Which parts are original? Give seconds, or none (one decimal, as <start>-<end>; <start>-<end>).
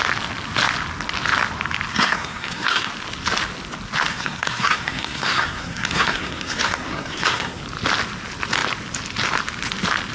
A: 0.0-1.9; 2.9-4.1; 7.6-10.1